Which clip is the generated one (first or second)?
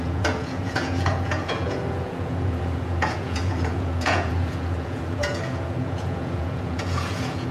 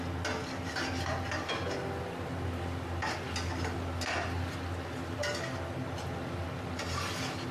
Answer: first